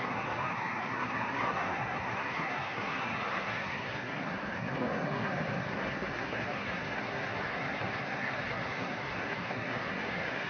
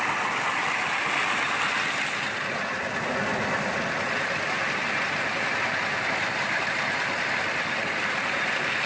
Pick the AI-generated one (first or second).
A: first